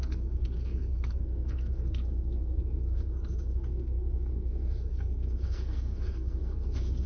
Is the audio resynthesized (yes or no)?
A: yes